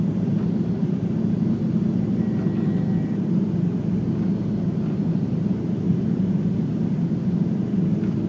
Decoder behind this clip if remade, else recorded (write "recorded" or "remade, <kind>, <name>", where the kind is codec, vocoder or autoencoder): recorded